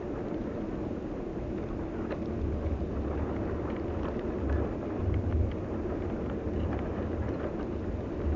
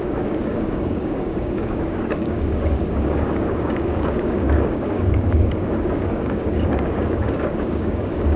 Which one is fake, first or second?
second